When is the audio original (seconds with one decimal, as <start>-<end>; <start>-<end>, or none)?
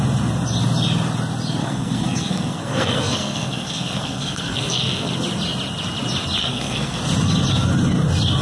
0.0-1.6; 5.1-6.4; 7.0-8.4